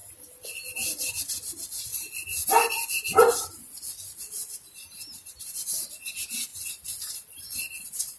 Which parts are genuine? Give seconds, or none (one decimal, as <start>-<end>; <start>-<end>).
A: 0.0-1.9; 3.5-6.5